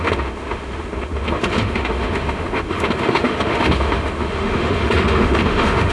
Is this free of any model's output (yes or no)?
no